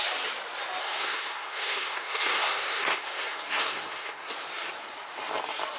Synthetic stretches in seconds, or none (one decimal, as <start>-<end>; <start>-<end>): 0.8-4.3